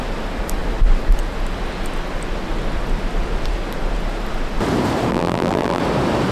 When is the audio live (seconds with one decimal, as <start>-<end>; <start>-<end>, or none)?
0.0-5.1; 5.8-6.3